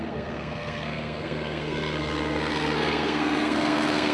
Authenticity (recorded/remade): remade